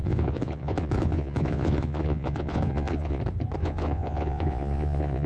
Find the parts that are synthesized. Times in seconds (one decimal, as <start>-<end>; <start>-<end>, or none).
0.0-3.2; 3.6-5.3